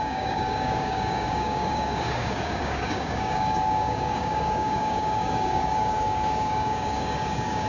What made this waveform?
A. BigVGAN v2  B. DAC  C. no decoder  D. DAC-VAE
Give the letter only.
B